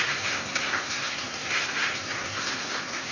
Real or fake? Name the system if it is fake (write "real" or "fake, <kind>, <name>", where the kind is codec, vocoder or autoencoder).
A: fake, codec, SNAC